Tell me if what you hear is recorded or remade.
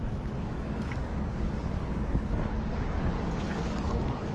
remade